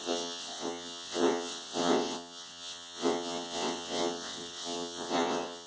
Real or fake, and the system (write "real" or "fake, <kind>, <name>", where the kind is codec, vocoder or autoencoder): fake, vocoder, WaveNeXt